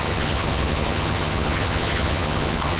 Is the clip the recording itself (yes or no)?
no